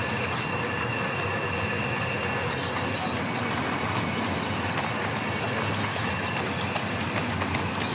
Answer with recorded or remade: recorded